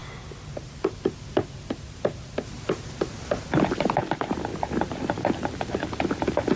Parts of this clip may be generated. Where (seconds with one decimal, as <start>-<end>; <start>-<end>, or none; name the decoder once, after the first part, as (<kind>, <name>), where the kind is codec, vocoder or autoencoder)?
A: none